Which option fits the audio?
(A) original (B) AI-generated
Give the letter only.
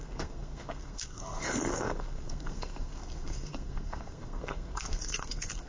B